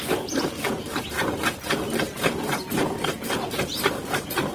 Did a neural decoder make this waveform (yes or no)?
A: yes